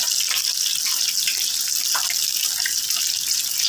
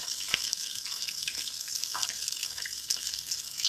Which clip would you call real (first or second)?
first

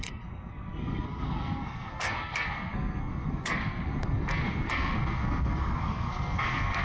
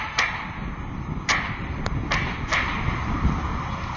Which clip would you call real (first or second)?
second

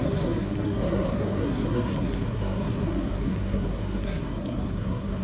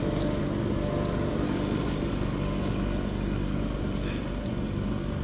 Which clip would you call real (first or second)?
second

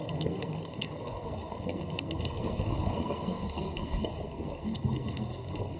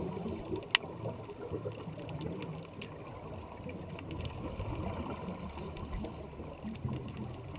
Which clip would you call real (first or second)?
second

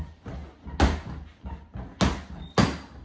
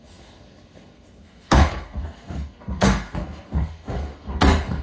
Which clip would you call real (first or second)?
first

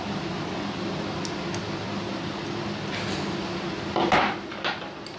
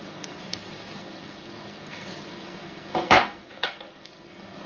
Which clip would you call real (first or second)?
first